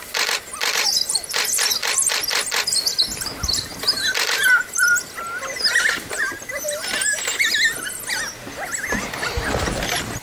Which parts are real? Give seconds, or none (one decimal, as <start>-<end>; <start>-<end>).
0.0-10.2